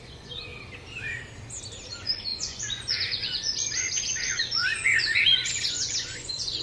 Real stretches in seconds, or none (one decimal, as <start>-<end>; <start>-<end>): 0.5-1.9